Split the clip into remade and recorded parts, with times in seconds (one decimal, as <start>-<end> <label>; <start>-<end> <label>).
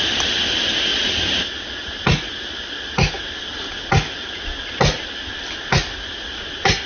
0.0-6.9 recorded